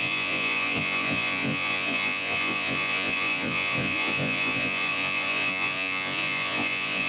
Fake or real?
fake